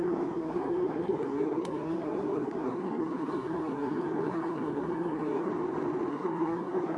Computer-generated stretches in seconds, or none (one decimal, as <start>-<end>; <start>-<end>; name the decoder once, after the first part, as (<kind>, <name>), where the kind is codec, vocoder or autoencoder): 0.0-5.5 (codec, SNAC); 6.1-7.0